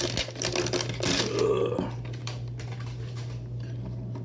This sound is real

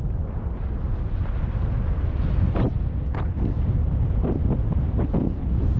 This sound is real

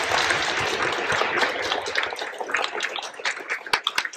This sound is real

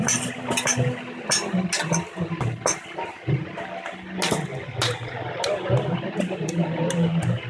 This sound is real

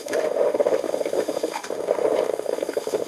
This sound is fake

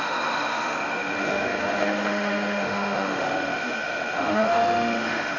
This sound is fake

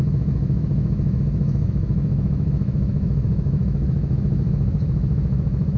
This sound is fake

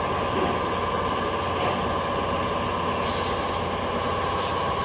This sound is real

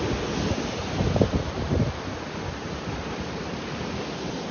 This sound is real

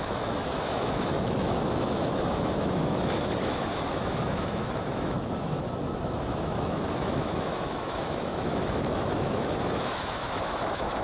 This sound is fake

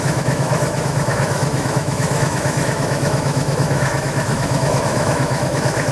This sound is fake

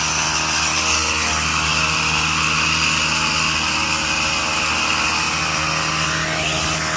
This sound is real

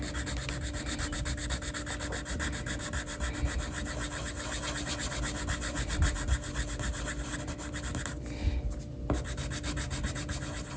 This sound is real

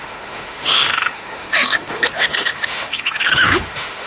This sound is fake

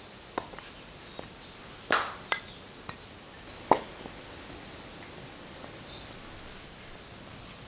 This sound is real